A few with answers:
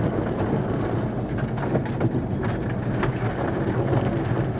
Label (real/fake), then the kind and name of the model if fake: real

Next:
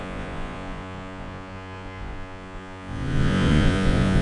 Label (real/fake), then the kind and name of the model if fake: fake, vocoder, Vocos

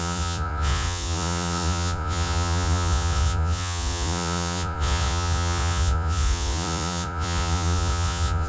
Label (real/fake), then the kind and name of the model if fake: fake, vocoder, Vocos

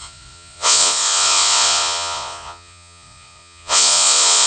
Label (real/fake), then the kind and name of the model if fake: fake, vocoder, Vocos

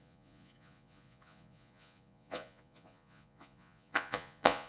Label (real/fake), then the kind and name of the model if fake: fake, vocoder, Vocos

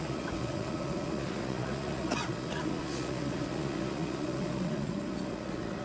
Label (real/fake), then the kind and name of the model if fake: fake, vocoder, Vocos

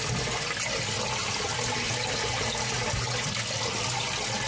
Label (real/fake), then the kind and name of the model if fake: real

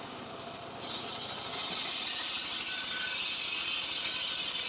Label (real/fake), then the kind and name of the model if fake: real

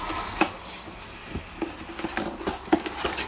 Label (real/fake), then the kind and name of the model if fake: real